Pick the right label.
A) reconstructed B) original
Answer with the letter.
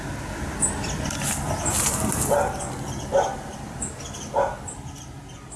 B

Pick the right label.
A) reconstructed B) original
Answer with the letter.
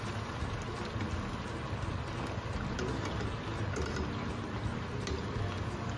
B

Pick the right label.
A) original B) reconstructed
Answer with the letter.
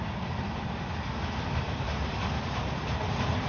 A